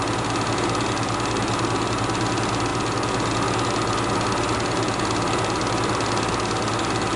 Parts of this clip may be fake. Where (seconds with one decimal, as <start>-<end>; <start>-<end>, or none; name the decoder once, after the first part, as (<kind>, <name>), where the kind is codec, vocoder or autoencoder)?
none